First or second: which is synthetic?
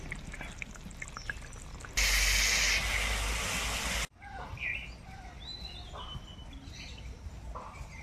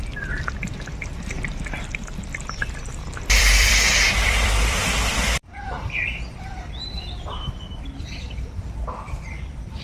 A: second